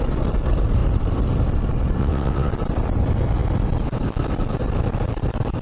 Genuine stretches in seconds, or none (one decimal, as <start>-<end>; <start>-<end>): 0.0-2.0; 2.5-5.6